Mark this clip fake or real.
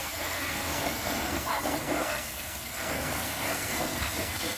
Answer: fake